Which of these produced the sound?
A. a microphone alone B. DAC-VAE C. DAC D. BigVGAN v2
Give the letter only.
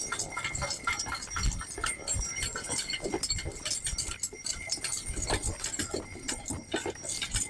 A